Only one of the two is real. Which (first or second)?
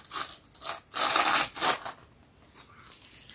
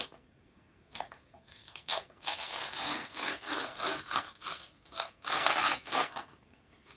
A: first